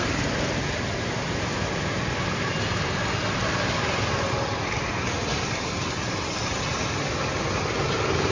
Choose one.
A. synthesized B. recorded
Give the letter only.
B